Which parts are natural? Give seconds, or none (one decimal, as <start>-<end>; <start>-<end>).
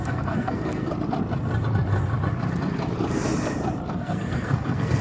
0.9-3.9